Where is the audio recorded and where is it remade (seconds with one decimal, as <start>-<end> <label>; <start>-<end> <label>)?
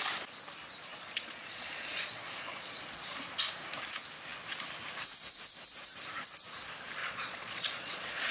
0.0-0.9 recorded; 0.9-3.2 remade; 3.2-7.0 recorded; 7.0-8.3 remade